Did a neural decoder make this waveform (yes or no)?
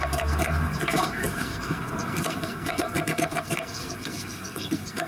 yes